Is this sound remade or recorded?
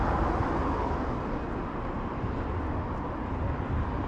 recorded